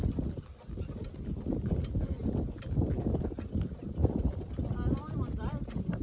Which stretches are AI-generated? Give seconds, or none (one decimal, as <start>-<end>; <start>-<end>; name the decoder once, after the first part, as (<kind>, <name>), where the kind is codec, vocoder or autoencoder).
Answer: 1.0-2.2 (vocoder, BigVGAN v2)